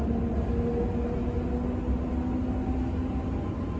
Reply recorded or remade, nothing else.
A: recorded